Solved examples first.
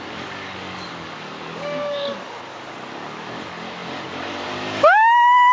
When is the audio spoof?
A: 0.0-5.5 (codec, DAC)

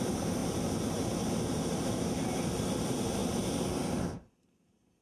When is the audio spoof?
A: none

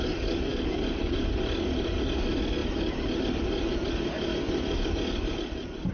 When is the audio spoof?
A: none

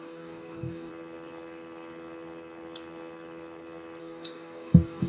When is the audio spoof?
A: 0.0-0.9 (codec, DAC); 4.0-5.1

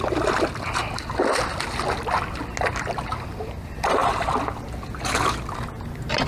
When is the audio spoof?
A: none

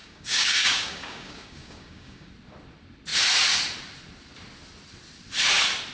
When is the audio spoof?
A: 0.0-2.3 (codec, DAC)

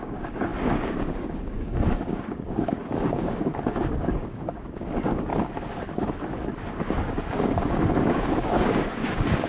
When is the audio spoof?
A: 0.0-5.3 (codec, DAC); 6.7-9.5

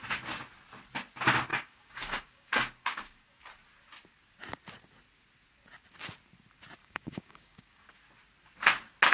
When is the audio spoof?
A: 1.5-3.4 (codec, DAC); 6.8-7.9